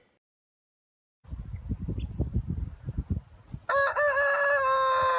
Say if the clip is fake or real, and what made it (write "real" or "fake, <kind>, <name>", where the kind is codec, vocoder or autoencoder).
real